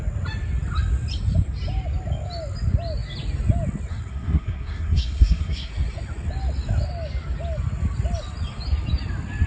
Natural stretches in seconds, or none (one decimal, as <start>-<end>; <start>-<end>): 0.0-3.9; 5.7-9.5